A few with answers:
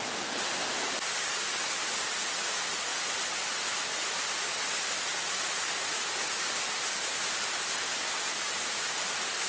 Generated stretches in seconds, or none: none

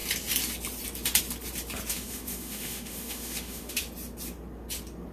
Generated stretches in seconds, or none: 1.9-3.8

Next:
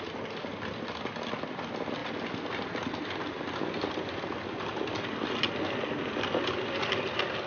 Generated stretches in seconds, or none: none

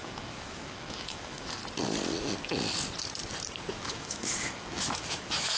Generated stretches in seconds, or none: 0.0-1.6; 3.7-5.6

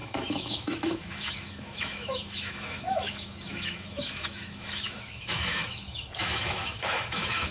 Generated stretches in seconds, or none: 0.0-7.5